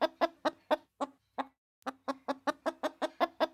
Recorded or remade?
recorded